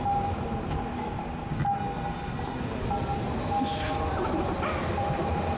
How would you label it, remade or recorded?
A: recorded